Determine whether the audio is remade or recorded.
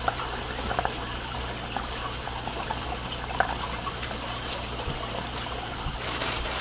remade